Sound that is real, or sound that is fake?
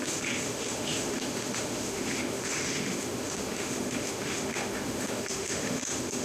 fake